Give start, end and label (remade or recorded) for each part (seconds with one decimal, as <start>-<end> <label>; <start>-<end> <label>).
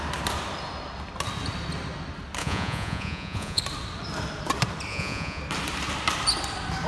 0.0-2.4 recorded; 2.4-3.6 remade; 3.6-4.9 recorded; 4.9-5.4 remade; 5.4-6.9 recorded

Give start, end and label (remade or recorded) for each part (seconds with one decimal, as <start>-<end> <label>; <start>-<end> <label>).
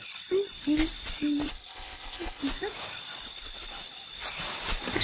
0.0-1.5 recorded; 1.5-2.4 remade; 2.4-5.0 recorded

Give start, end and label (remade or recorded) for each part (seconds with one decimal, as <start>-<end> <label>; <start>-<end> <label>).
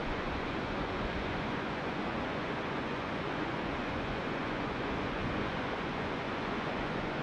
0.0-7.2 remade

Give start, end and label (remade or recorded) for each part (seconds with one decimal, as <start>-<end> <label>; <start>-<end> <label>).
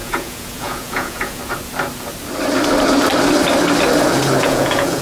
0.0-1.4 remade; 1.4-4.4 recorded; 4.4-5.0 remade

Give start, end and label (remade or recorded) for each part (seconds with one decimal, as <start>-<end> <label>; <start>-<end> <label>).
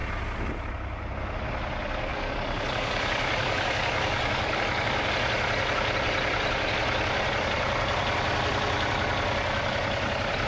0.0-2.1 recorded; 2.1-5.1 remade; 5.1-10.5 recorded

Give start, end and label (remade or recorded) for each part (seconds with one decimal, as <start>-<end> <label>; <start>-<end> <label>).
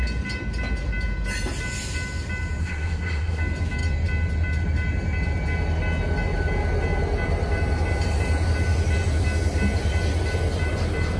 0.0-2.6 recorded; 2.6-3.4 remade; 3.4-11.2 recorded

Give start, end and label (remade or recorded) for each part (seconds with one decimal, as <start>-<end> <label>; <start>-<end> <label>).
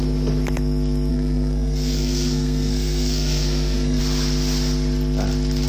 0.0-1.1 recorded; 1.1-4.0 remade; 4.0-5.7 recorded